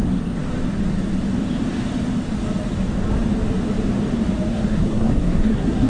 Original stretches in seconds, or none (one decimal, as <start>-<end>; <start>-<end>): 0.0-4.5